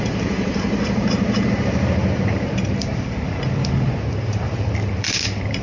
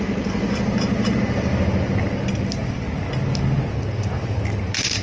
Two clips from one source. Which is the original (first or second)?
second